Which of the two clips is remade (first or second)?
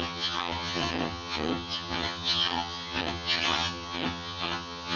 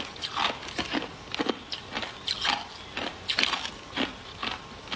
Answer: first